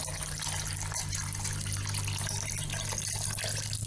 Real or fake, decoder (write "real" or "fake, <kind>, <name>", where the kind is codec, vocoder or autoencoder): real